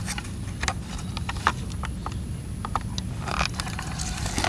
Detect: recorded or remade recorded